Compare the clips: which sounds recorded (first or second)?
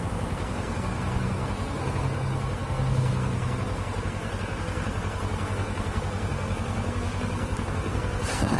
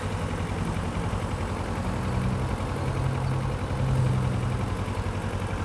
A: second